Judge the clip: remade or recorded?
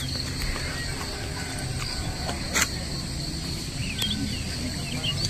recorded